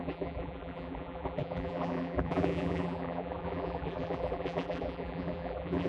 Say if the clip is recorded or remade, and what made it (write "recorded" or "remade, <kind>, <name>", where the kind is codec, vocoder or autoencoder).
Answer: remade, vocoder, BigVGAN v2